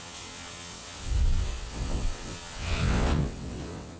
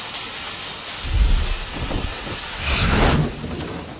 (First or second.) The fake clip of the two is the first